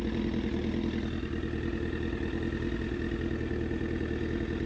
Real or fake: real